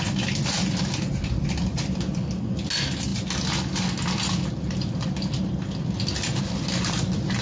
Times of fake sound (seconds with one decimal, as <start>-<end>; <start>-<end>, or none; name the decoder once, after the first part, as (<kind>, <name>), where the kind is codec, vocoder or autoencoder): none